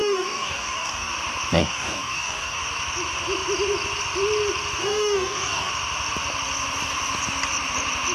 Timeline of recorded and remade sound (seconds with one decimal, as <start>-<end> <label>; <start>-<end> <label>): 0.0-1.1 remade; 1.1-1.6 recorded; 1.6-2.6 remade; 2.6-4.8 recorded; 4.8-5.7 remade; 5.7-8.1 recorded